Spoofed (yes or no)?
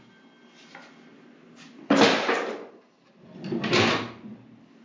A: no